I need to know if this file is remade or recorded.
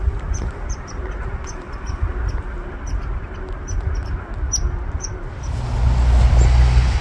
recorded